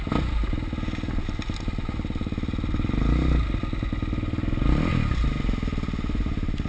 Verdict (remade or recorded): recorded